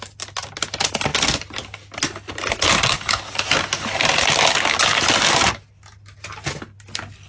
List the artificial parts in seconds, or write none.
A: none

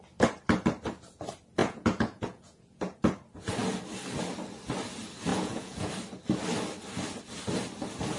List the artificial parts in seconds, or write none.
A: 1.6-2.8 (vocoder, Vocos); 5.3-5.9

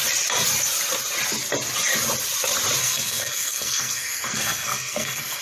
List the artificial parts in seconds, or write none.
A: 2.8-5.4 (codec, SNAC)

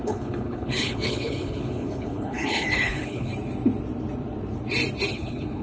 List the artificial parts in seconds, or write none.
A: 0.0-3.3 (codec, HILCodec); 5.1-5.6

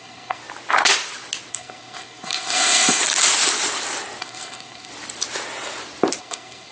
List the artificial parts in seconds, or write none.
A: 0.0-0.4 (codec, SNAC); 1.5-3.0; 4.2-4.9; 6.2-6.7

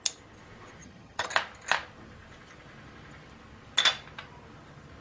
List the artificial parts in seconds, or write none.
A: 0.8-1.3 (vocoder, HiFi-GAN)

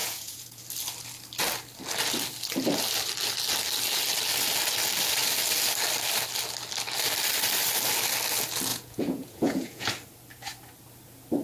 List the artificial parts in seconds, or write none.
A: 0.0-0.6 (vocoder, Vocos); 8.7-9.9